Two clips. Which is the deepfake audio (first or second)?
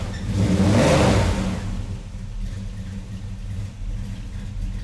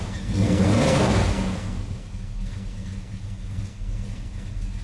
second